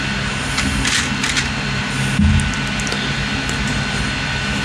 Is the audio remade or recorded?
recorded